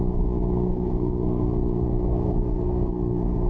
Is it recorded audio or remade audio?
remade